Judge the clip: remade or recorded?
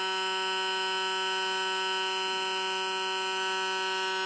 recorded